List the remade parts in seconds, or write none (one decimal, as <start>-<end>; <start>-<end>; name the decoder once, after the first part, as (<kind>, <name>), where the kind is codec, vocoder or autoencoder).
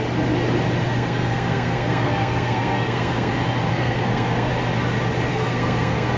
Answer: 0.8-3.3 (codec, SNAC); 3.7-4.5; 5.3-6.2